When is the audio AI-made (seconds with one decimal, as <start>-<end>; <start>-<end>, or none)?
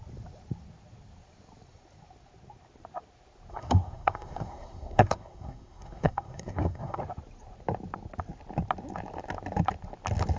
3.5-7.0